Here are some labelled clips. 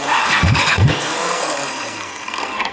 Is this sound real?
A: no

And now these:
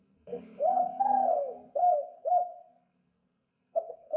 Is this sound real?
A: no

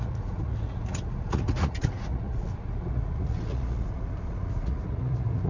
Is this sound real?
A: no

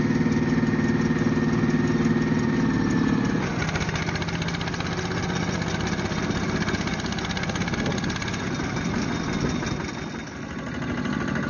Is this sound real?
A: yes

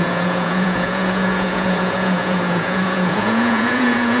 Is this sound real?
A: no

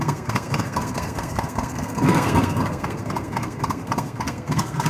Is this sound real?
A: no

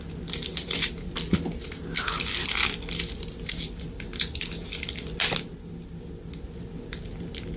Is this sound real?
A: yes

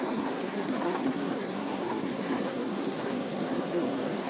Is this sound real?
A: no